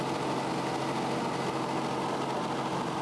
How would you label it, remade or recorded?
recorded